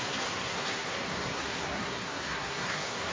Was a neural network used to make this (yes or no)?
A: yes